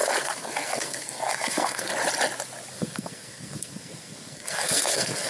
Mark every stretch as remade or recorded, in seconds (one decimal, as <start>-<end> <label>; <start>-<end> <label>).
0.0-1.9 remade; 1.9-2.7 recorded; 2.7-5.3 remade